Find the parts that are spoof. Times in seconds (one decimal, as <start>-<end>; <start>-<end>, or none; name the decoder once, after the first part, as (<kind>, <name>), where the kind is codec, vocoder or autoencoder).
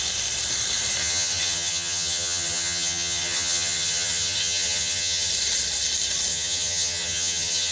1.0-5.3 (vocoder, HiFi-GAN); 6.3-7.7